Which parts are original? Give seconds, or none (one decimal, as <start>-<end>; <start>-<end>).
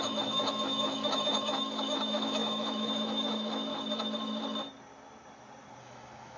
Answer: 3.7-5.8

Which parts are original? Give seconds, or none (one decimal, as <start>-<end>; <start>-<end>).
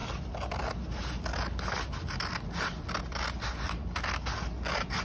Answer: 0.0-5.0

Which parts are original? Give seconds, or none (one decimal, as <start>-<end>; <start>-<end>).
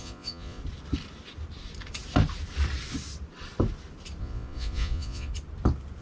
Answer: 0.6-4.2; 5.3-6.0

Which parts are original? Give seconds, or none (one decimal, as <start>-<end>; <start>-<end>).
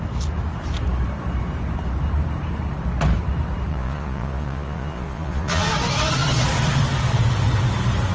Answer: 0.0-3.7; 5.7-8.1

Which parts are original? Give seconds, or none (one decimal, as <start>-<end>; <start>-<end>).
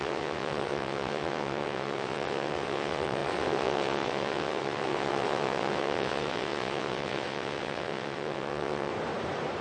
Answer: 8.9-9.6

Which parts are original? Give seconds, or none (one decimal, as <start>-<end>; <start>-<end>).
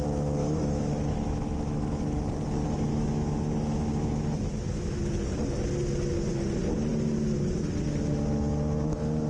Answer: 0.0-0.4; 2.2-2.9; 5.0-9.3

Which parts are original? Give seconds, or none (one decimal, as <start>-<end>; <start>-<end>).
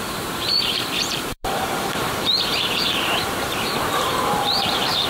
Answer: none